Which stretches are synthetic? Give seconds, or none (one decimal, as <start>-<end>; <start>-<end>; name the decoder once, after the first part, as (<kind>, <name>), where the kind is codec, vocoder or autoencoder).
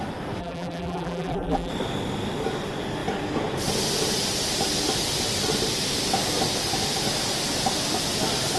0.4-1.7 (vocoder, BigVGAN v2)